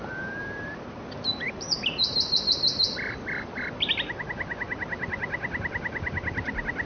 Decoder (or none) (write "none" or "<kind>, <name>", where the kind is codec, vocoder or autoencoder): none